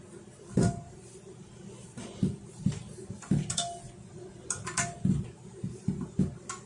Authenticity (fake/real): real